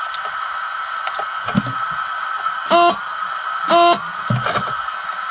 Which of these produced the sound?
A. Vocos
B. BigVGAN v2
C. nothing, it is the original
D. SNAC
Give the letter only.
C